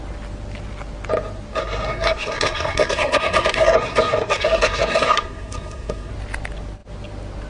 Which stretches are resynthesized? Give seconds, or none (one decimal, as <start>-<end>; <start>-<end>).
1.6-6.1